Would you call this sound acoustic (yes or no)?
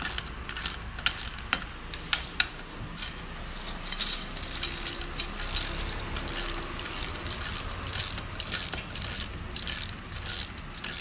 yes